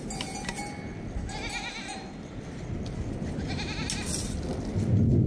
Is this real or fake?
real